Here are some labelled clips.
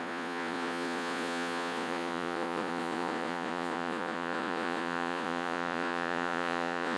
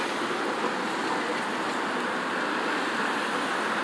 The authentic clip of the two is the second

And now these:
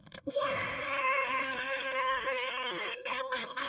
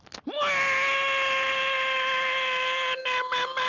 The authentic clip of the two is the second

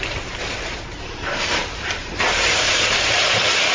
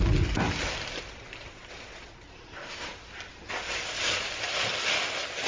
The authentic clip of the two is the second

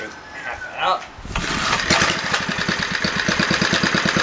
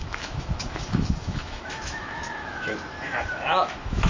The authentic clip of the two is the first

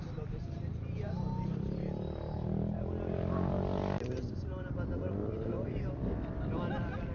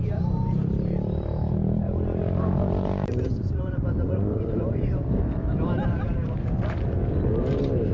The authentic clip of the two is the first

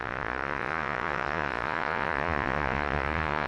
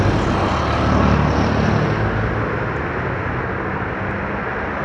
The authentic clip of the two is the second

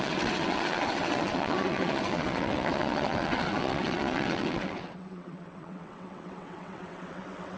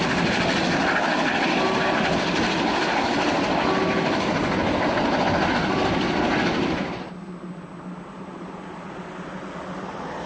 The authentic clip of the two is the second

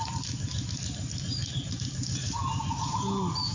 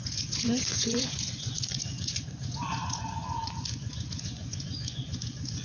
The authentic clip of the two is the first